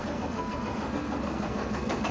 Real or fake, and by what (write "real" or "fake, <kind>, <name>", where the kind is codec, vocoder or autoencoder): fake, codec, SNAC